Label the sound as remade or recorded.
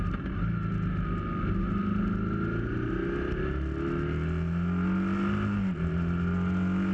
recorded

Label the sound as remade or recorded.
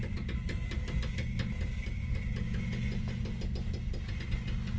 recorded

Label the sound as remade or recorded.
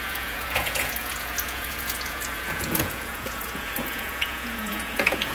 remade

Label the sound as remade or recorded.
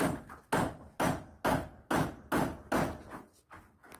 recorded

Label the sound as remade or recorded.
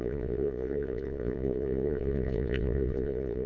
remade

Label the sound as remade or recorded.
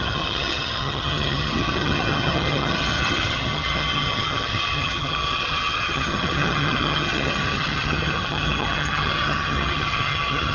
remade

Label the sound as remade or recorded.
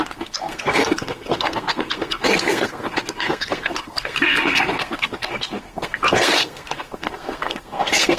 remade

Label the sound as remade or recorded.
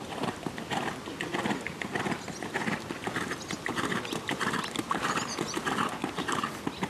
recorded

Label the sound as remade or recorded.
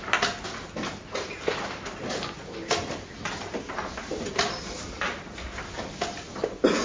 recorded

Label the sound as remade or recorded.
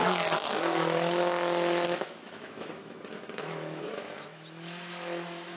remade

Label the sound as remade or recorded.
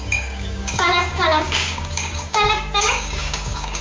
remade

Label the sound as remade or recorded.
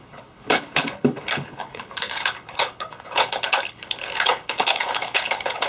remade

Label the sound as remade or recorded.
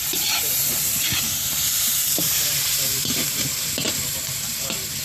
remade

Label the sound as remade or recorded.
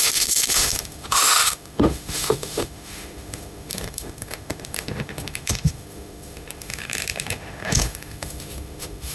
remade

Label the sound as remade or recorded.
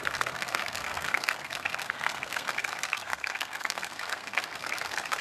remade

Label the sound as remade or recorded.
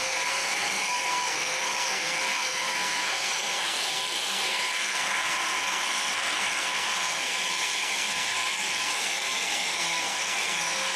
remade